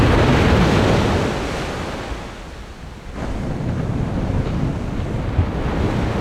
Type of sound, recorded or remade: recorded